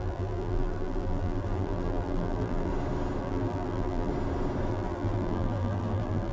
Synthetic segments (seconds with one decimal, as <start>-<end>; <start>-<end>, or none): 0.0-2.7; 3.2-4.1; 4.7-6.3